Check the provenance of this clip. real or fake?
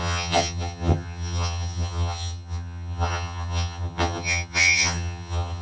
fake